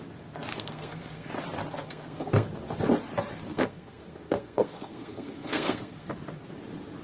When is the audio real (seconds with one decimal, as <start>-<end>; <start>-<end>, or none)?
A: 0.0-0.5; 1.3-1.8; 2.5-3.5; 6.1-7.0